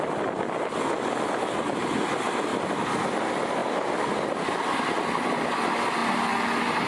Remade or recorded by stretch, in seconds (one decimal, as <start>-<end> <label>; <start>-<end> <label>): 0.0-6.9 recorded